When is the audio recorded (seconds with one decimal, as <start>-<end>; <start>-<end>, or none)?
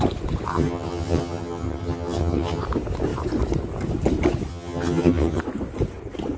0.0-0.5; 2.6-4.5; 5.4-6.4